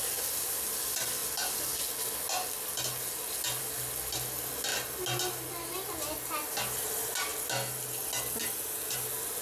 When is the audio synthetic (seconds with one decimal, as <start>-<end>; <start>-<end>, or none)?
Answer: none